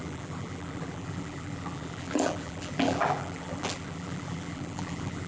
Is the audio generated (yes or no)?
yes